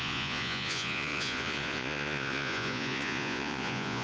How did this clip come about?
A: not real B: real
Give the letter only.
A